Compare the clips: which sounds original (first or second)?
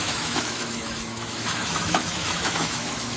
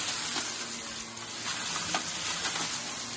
second